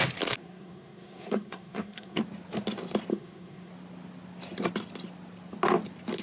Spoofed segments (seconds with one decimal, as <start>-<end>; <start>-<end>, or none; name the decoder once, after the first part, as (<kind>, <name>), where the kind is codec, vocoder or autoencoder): 0.4-2.2 (codec, SNAC); 3.1-3.7